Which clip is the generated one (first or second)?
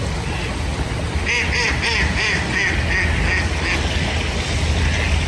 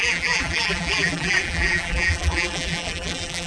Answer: second